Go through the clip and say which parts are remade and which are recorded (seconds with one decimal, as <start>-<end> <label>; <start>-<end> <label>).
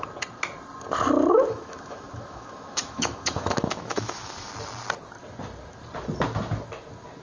0.0-1.3 recorded; 1.3-4.5 remade; 4.5-7.2 recorded